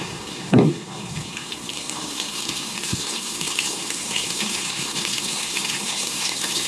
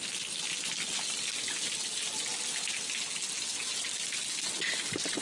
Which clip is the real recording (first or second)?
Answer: second